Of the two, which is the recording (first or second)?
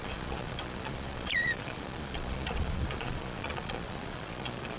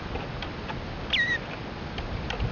second